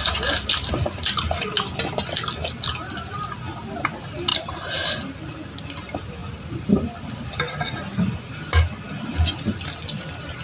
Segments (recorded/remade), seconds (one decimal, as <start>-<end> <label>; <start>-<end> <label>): 0.0-4.3 recorded; 4.3-5.0 remade; 5.0-10.4 recorded